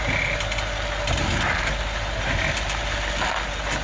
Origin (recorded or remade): recorded